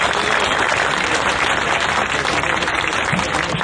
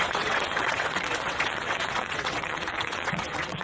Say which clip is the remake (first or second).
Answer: second